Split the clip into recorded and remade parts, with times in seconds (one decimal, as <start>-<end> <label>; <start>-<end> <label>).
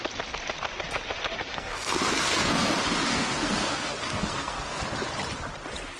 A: 0.0-1.5 recorded; 1.5-2.7 remade; 2.7-3.1 recorded; 3.1-4.8 remade; 4.8-6.0 recorded